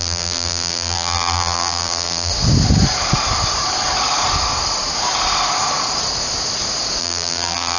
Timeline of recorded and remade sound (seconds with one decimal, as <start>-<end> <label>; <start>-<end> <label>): 0.0-2.3 remade; 2.3-7.0 recorded; 7.0-7.8 remade

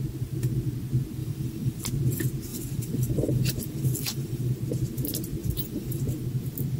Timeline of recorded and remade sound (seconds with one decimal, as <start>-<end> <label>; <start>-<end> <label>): 0.0-1.2 recorded; 1.2-1.8 remade; 1.8-2.5 recorded; 2.5-4.5 remade; 4.5-5.4 recorded; 5.4-6.0 remade; 6.0-6.8 recorded

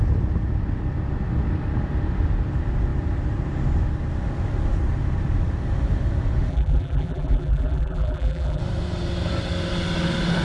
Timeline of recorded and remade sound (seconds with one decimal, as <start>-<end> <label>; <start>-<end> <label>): 0.0-6.5 recorded; 6.5-8.6 remade; 8.6-10.4 recorded

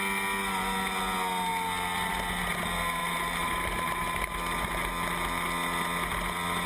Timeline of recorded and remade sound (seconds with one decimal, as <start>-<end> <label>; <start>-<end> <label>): 0.0-3.0 recorded; 3.0-4.3 remade; 4.3-6.7 recorded

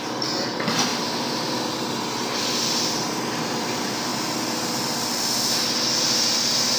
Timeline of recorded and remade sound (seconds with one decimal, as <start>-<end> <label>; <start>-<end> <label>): 0.0-6.8 recorded

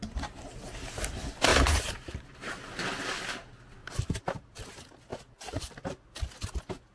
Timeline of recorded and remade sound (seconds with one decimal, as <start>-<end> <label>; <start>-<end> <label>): 0.0-1.5 recorded; 1.5-2.5 remade; 2.5-3.8 recorded; 3.8-4.6 remade; 4.6-5.1 recorded; 5.1-5.7 remade; 5.7-6.9 recorded